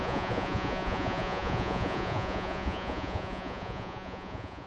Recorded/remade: remade